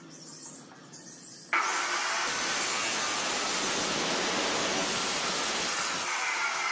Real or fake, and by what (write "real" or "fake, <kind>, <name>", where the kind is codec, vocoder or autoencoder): real